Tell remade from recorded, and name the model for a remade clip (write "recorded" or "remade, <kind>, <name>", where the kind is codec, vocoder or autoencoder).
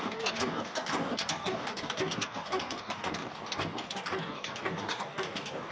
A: remade, codec, DAC